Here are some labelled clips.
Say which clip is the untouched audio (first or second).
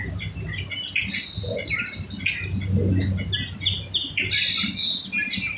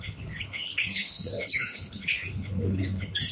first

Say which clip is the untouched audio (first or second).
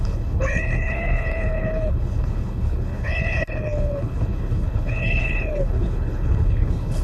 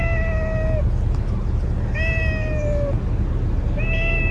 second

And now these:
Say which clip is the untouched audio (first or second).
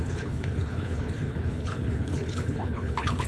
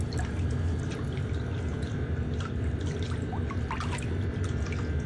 second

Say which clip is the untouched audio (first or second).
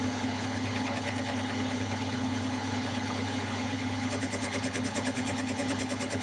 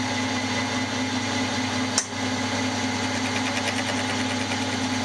second